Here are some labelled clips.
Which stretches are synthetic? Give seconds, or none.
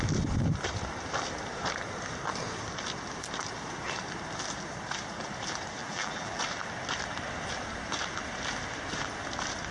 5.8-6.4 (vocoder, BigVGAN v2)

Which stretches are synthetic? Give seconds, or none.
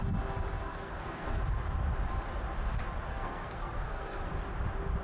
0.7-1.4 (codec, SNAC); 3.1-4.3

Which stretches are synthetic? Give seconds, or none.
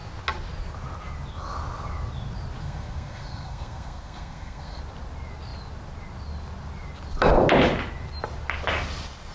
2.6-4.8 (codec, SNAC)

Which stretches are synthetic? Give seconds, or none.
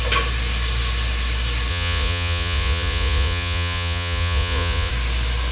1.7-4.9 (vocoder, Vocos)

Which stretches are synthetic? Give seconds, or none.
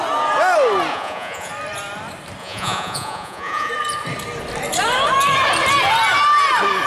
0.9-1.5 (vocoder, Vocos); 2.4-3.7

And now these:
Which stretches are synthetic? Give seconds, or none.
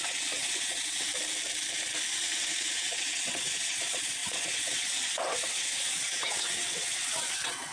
0.0-1.1 (vocoder, WaveNeXt); 2.2-7.7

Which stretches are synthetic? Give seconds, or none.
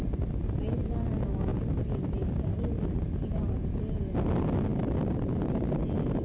1.5-3.1 (vocoder, BigVGAN v2); 4.7-5.4